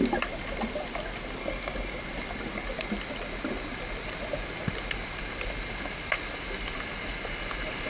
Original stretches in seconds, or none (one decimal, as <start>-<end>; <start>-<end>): 0.0-1.4; 2.0-7.9